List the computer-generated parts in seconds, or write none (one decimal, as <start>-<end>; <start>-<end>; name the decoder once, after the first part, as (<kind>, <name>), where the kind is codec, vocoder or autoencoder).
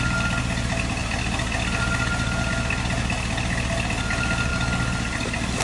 none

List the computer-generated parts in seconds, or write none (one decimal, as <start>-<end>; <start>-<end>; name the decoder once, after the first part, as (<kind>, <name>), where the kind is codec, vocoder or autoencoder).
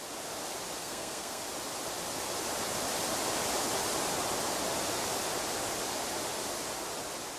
0.8-1.4 (codec, SNAC)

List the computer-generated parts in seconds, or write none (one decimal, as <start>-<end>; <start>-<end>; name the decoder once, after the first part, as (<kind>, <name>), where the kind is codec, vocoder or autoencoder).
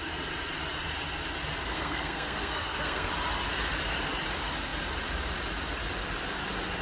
1.7-3.1 (codec, SNAC)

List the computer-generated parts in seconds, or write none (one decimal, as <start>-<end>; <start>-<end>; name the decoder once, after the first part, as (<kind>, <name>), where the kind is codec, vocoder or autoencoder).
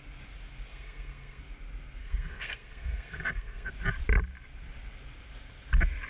0.7-1.4 (codec, SNAC); 2.0-3.7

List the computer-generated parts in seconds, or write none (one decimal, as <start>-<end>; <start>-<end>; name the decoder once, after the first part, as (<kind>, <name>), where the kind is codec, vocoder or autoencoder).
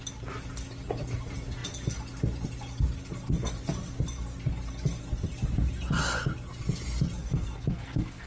7.2-8.3 (codec, SNAC)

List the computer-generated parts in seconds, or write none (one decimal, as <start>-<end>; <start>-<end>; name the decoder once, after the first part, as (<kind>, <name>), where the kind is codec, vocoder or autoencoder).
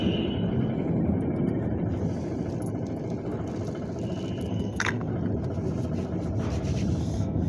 4.5-5.1 (codec, SNAC); 7.0-7.5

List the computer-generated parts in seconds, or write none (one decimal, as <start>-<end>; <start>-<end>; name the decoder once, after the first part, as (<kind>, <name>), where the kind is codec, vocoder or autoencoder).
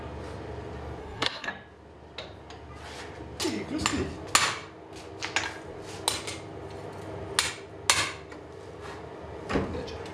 1.0-1.5 (codec, SNAC)